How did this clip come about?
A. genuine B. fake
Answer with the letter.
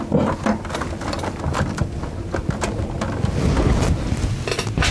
A